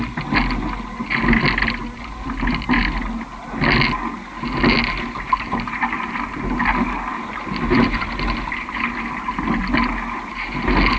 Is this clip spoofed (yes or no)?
no